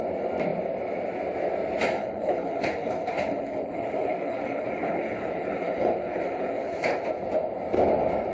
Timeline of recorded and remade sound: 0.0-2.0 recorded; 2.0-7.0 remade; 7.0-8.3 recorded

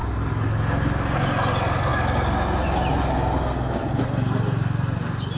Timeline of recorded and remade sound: 0.0-5.4 recorded

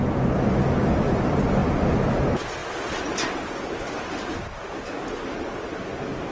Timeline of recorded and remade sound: 0.0-6.3 recorded

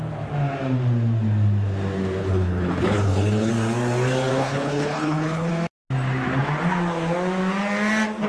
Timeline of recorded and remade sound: 0.0-2.2 recorded; 2.2-3.5 remade; 3.5-4.3 recorded; 4.3-5.5 remade; 5.5-8.3 recorded

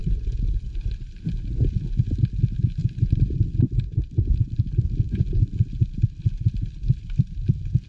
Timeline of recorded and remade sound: 0.0-7.9 recorded

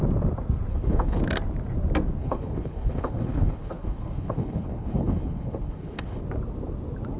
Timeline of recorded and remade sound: 0.0-0.7 recorded; 0.7-1.2 remade; 1.2-2.2 recorded; 2.2-6.2 remade; 6.2-7.2 recorded

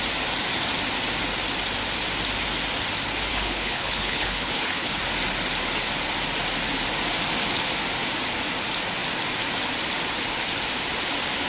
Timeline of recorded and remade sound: 0.0-3.3 recorded; 3.3-5.0 remade; 5.0-11.5 recorded